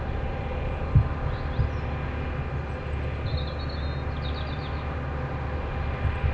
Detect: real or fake real